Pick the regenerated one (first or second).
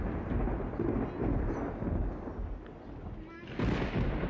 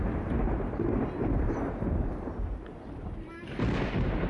second